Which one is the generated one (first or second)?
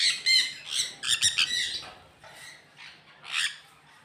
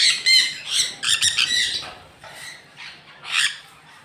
second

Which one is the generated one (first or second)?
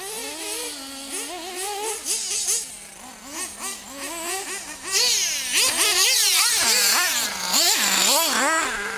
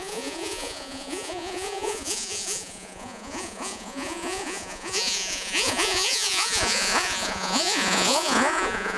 second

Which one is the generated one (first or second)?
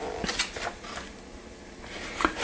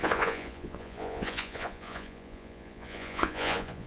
second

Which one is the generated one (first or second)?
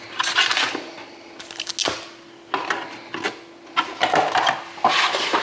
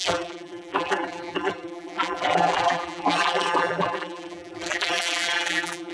second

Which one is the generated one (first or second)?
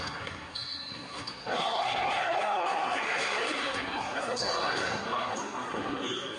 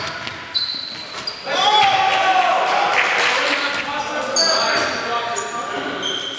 first